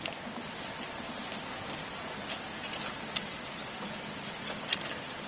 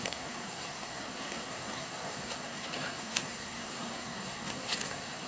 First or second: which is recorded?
first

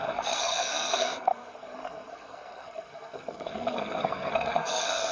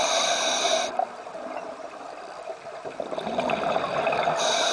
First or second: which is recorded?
second